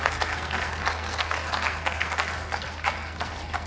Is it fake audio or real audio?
fake